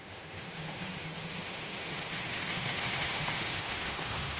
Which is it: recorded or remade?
remade